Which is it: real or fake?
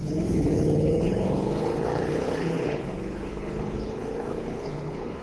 fake